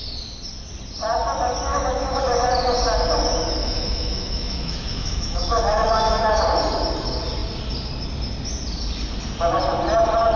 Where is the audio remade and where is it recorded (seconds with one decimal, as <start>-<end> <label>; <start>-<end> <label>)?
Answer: 0.0-1.7 recorded; 1.7-2.2 remade; 2.2-3.6 recorded; 3.6-6.4 remade; 6.4-10.4 recorded